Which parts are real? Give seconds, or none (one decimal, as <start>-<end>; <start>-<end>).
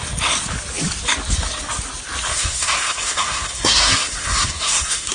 0.0-2.3